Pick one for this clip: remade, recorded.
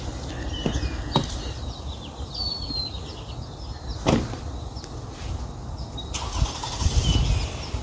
recorded